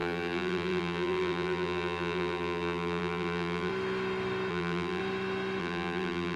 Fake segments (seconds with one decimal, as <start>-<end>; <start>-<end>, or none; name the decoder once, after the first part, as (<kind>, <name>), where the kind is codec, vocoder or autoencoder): 0.0-3.7 (vocoder, BigVGAN v2); 4.5-5.0; 5.6-6.4